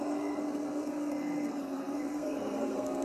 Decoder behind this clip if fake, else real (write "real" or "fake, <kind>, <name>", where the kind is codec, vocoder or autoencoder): fake, codec, SNAC